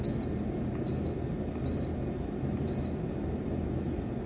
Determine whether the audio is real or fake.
real